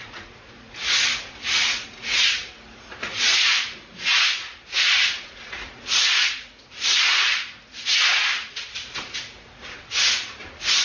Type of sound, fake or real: fake